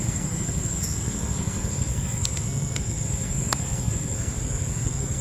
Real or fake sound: fake